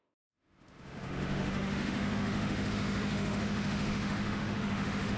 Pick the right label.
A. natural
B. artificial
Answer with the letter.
B